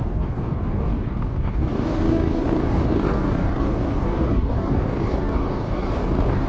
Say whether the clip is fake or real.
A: fake